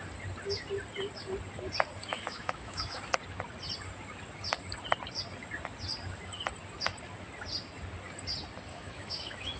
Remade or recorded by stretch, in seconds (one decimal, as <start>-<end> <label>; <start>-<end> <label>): 0.0-2.1 recorded; 2.1-3.0 remade; 3.0-8.7 recorded; 8.7-9.6 remade